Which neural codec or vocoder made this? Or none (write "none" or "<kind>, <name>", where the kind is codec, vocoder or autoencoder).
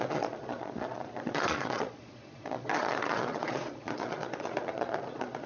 vocoder, Vocos